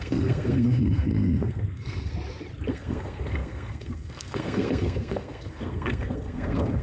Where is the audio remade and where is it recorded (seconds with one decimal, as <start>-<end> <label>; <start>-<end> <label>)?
0.0-2.1 remade; 2.1-2.7 recorded; 2.7-6.8 remade